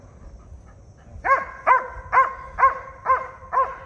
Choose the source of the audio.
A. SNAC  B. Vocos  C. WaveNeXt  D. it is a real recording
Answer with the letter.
D